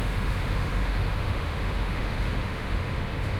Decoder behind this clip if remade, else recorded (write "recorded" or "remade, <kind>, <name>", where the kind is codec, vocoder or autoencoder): remade, autoencoder, DAC-VAE